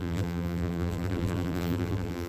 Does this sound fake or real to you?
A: fake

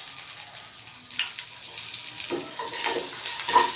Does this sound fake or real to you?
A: real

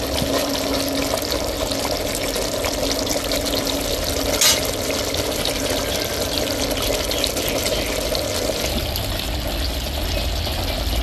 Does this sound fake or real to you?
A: real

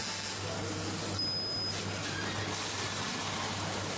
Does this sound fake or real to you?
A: real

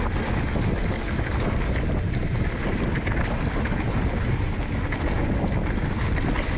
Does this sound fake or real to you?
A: real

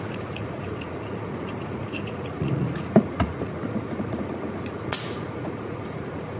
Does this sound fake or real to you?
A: fake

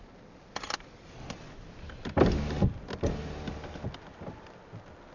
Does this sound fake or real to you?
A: real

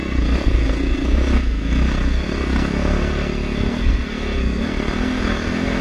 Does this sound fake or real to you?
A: fake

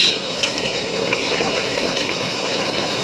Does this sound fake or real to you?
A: fake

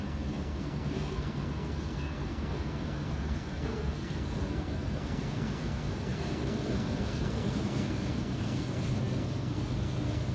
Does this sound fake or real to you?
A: fake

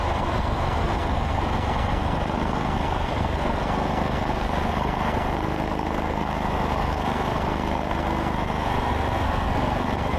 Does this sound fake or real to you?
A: fake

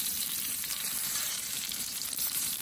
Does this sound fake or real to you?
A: fake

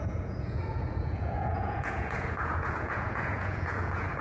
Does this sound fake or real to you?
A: fake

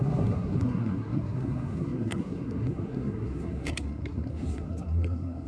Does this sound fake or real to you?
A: fake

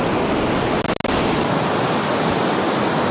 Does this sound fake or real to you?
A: real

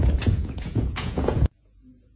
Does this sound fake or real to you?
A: fake